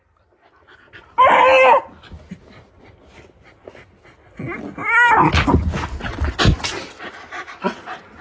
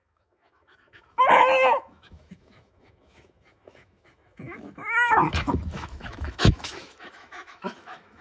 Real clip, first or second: first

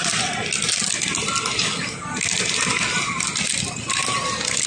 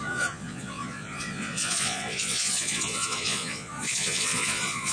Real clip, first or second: first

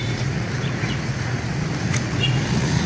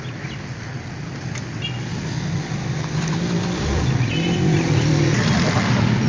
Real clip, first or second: second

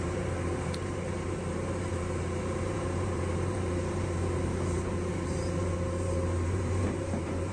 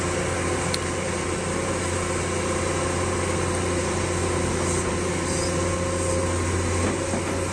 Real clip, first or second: second